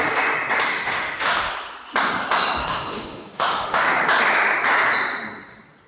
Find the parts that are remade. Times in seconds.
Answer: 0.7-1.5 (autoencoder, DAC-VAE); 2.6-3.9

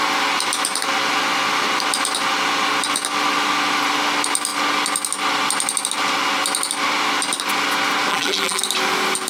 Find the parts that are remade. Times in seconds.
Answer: 8.1-8.6 (vocoder, BigVGAN v2)

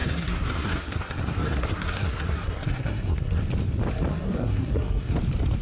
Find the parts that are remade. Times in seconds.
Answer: 0.0-3.4 (codec, SNAC); 4.1-5.1